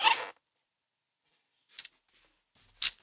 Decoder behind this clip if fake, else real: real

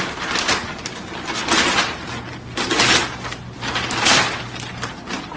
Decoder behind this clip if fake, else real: real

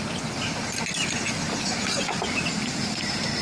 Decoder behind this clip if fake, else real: real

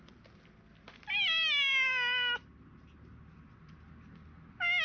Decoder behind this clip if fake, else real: real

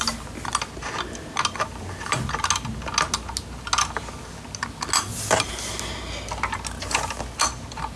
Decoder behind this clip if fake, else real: real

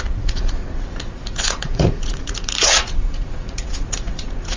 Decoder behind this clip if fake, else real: fake, vocoder, Vocos